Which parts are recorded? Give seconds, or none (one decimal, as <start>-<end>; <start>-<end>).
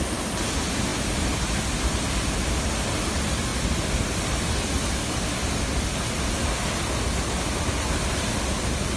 0.0-9.0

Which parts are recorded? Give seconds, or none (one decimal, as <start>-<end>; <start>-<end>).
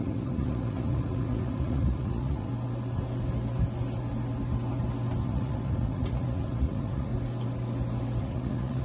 2.5-5.2; 7.1-8.2